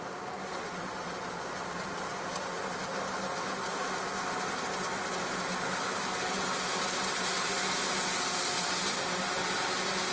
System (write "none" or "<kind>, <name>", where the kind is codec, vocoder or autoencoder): none